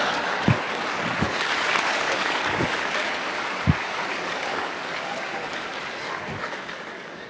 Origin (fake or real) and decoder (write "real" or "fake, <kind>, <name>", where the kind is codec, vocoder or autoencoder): fake, codec, DAC